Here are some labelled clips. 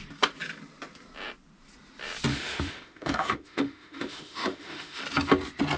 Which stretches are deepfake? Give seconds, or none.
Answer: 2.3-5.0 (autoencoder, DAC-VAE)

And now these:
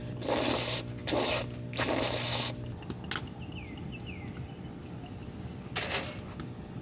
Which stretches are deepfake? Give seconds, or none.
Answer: none

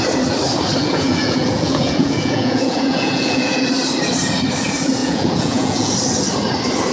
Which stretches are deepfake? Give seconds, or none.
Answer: 0.8-3.7 (vocoder, Vocos); 5.0-5.9

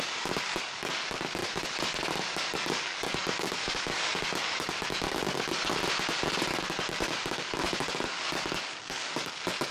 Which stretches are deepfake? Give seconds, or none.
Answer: 0.0-5.8 (codec, DAC); 6.3-9.7

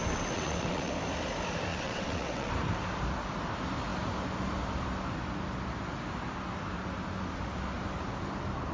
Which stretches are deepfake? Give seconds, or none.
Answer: 0.0-0.9 (vocoder, WaveNeXt); 1.7-2.5

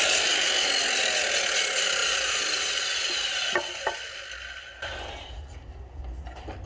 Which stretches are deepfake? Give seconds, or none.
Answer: none